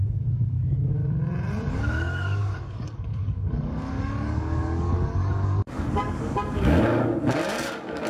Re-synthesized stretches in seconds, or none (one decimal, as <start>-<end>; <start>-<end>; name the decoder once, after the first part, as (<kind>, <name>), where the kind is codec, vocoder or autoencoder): 0.0-1.0 (codec, DAC); 1.7-8.1